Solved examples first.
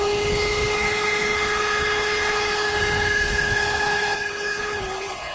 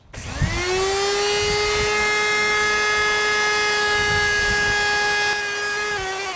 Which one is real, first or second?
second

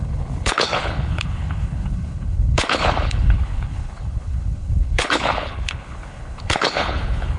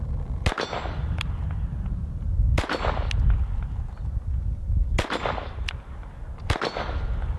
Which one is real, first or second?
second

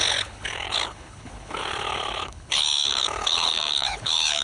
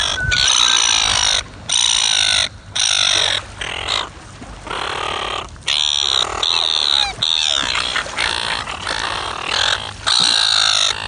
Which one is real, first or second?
second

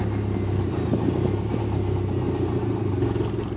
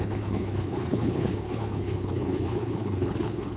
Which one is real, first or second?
first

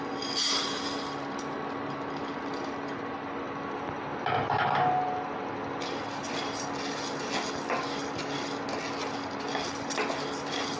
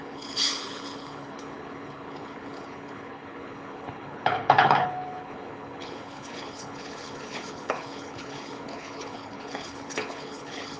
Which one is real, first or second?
first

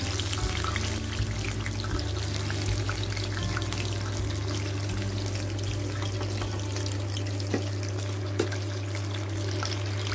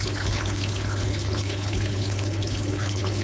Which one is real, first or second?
first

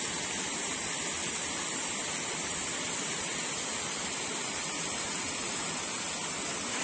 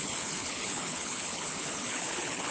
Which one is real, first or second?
first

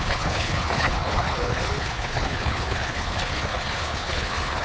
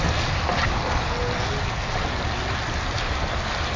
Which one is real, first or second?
second